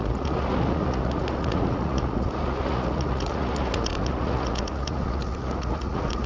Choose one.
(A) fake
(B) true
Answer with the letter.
A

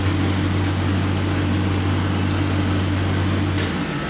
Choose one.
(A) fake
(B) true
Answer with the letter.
B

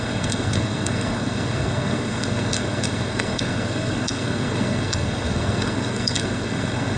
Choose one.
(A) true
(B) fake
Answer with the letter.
B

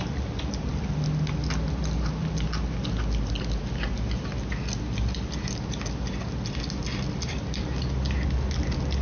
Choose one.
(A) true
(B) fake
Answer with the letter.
A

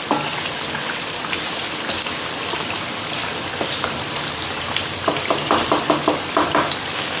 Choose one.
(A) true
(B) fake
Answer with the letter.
A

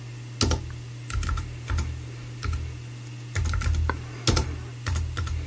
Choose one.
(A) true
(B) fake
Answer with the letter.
A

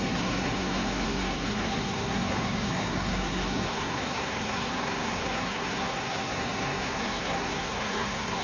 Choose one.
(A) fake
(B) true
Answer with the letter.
A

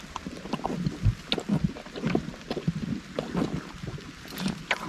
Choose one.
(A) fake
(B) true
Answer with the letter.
B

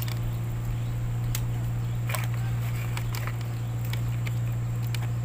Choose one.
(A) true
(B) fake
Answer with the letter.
A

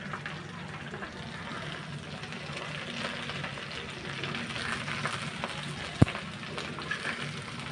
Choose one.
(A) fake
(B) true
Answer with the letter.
B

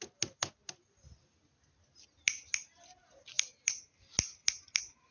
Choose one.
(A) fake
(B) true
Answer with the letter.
B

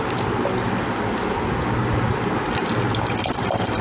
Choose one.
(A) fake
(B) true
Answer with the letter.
B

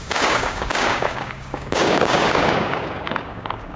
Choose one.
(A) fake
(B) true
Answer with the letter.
A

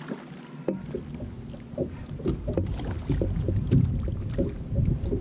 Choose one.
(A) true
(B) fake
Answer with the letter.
A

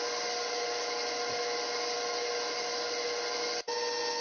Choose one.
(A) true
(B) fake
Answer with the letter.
A